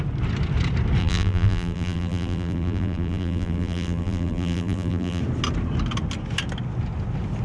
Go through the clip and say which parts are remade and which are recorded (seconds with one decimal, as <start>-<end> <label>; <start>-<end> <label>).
0.0-1.0 recorded; 1.0-5.2 remade; 5.2-7.4 recorded